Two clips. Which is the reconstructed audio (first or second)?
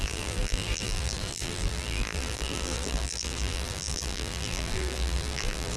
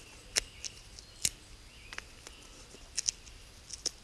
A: first